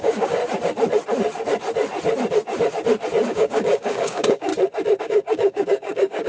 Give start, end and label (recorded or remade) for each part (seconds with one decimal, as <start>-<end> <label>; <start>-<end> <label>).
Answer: 0.0-0.4 remade; 0.4-3.3 recorded; 3.3-4.5 remade; 4.5-5.0 recorded; 5.0-6.3 remade

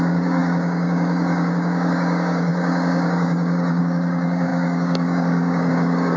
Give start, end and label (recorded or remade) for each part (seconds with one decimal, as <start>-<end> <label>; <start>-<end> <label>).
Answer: 0.0-6.2 remade

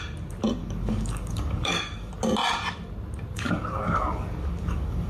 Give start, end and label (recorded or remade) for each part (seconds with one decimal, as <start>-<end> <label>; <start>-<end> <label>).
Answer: 0.0-0.6 recorded; 0.6-2.1 remade; 2.1-3.3 recorded; 3.3-5.1 remade

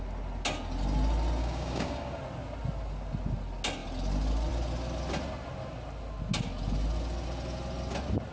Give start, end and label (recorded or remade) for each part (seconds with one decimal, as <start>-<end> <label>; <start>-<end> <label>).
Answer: 0.0-1.4 recorded; 1.4-2.2 remade; 2.2-8.3 recorded

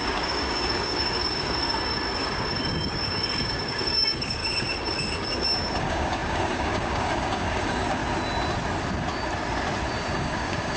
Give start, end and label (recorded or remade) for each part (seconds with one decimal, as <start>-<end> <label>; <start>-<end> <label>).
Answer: 0.0-4.4 remade; 4.4-5.8 recorded; 5.8-8.0 remade; 8.0-10.1 recorded; 10.1-10.8 remade

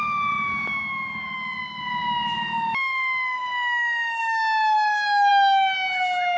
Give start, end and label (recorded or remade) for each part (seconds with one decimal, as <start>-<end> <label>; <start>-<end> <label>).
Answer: 0.0-6.4 recorded